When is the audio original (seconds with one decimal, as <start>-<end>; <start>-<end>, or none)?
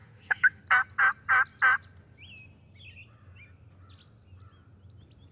0.6-5.3